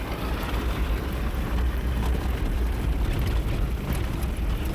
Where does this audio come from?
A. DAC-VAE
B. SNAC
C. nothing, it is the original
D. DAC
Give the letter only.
C